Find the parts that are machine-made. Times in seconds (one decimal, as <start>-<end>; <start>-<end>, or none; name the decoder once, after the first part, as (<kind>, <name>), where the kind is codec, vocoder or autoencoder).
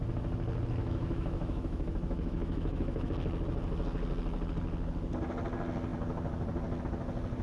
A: 0.8-3.1 (autoencoder, DAC-VAE)